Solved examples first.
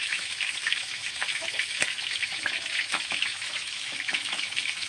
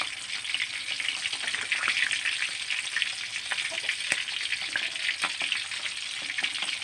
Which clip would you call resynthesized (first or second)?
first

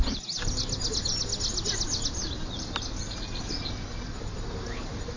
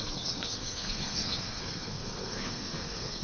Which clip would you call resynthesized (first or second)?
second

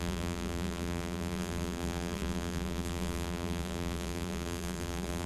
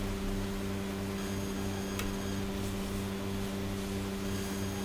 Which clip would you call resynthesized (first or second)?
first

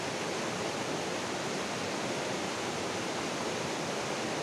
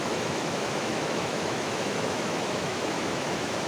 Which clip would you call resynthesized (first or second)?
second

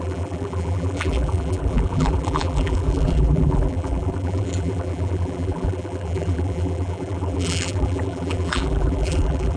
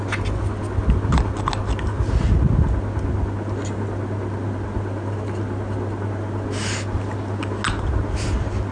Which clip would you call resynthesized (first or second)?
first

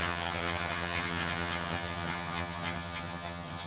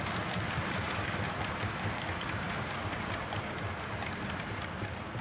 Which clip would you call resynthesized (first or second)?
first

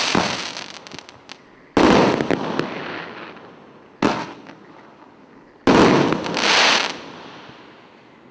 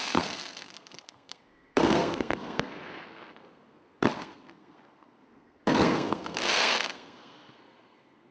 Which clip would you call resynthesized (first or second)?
second